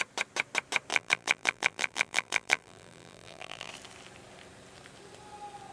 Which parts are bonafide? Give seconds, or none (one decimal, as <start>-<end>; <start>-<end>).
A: 0.0-0.9; 3.7-5.7